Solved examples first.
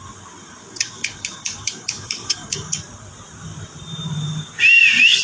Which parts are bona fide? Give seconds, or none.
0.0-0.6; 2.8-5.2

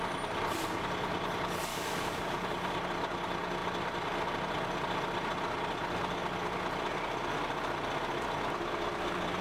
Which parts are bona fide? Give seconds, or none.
0.0-1.7; 2.2-9.4

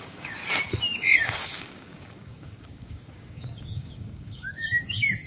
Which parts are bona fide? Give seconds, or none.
0.4-1.0

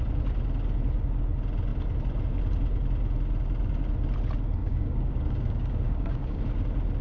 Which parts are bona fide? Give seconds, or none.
0.0-4.6; 6.4-7.0

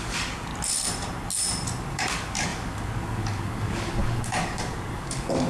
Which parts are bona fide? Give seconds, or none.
0.5-1.8

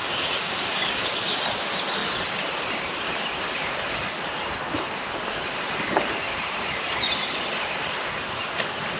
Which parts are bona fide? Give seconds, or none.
1.4-9.0